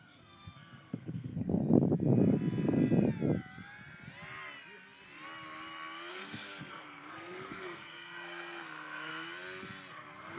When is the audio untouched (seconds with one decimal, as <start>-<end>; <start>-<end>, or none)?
1.6-6.1; 9.1-9.9